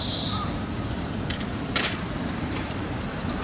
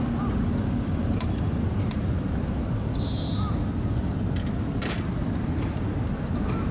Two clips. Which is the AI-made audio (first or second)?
first